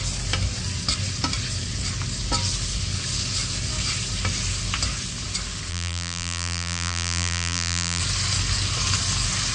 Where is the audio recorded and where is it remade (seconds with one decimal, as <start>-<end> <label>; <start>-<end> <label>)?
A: 0.0-5.7 recorded; 5.7-8.0 remade; 8.0-9.5 recorded